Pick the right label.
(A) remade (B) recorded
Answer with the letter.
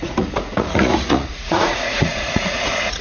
A